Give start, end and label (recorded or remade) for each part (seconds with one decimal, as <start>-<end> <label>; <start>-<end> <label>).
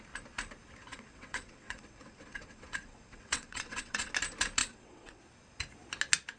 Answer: 0.0-0.9 recorded; 0.9-4.1 remade; 4.1-4.6 recorded; 4.6-5.2 remade; 5.2-6.4 recorded